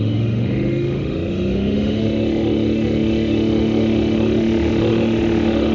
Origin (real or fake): fake